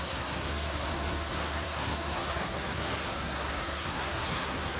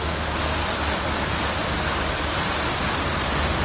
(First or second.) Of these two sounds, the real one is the second